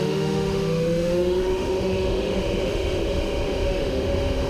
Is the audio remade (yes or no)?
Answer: yes